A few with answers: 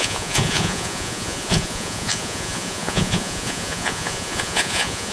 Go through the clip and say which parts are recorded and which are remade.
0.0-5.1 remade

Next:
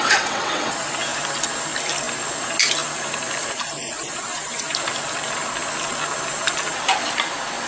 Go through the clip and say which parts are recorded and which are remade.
0.0-0.9 remade; 0.9-7.7 recorded

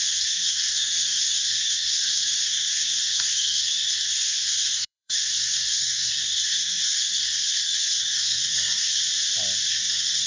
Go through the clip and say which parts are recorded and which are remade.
0.0-9.0 remade; 9.0-9.7 recorded; 9.7-10.3 remade

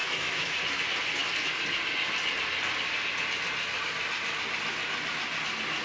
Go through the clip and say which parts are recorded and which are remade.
0.0-0.6 remade; 0.6-5.8 recorded

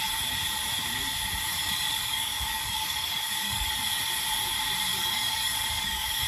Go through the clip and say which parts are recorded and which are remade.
0.0-1.6 recorded; 1.6-3.7 remade; 3.7-4.9 recorded; 4.9-6.3 remade

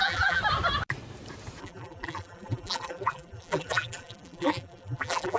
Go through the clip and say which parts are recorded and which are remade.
0.0-0.4 remade; 0.4-1.6 recorded; 1.6-5.4 remade